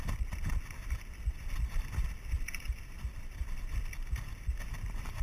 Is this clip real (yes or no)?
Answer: yes